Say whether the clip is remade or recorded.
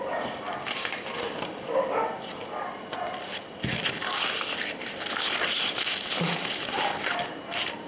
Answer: recorded